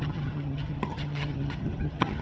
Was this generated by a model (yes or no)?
yes